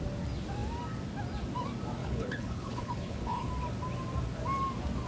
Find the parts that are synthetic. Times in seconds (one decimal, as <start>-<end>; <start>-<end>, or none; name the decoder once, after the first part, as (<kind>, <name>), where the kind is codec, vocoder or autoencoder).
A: 2.0-3.5 (codec, HILCodec)